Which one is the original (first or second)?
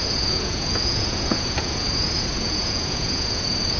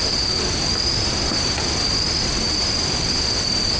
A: second